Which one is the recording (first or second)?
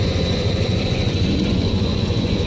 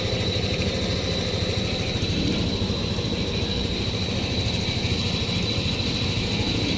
second